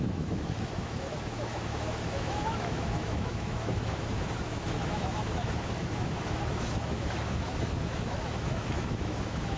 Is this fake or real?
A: fake